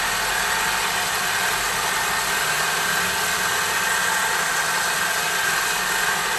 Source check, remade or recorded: recorded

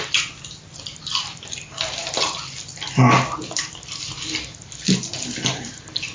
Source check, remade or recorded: recorded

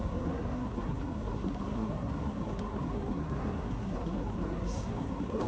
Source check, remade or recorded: remade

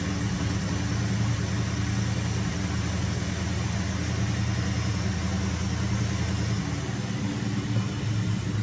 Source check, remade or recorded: recorded